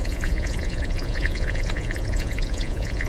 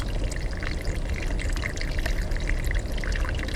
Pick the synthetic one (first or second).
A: first